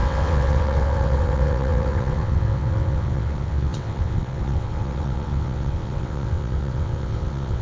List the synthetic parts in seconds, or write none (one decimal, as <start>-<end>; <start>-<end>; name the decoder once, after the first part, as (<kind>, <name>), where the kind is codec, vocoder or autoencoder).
0.0-7.6 (vocoder, WaveNeXt)